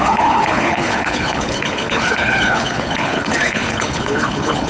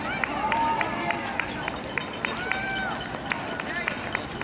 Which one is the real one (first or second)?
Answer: second